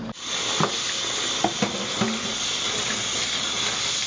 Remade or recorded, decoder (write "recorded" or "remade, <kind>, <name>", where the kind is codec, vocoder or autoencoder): recorded